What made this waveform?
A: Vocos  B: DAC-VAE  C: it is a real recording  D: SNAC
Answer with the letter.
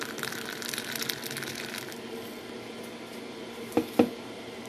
C